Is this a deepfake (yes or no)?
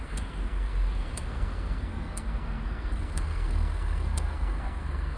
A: yes